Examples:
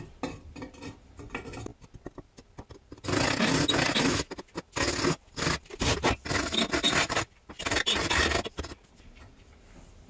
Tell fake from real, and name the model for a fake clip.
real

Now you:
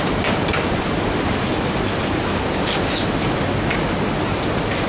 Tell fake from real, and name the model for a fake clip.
real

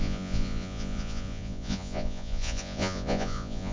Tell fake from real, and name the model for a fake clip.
fake, vocoder, Vocos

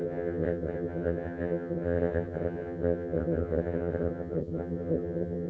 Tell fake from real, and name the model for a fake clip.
fake, vocoder, HiFi-GAN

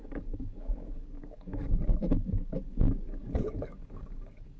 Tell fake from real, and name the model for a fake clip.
fake, codec, DAC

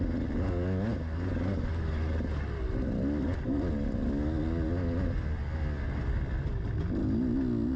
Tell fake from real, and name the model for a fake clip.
real